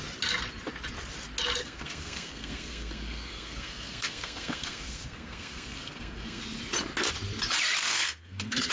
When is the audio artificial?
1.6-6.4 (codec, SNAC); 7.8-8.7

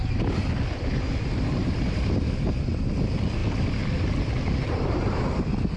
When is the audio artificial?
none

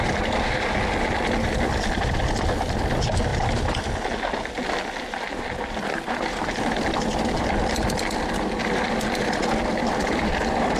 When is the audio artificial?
none

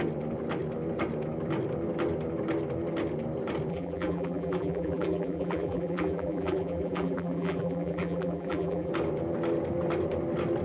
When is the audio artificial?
3.7-8.9 (vocoder, BigVGAN v2)